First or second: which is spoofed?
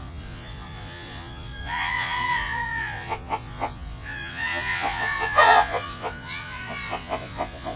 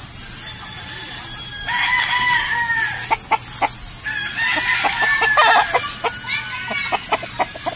first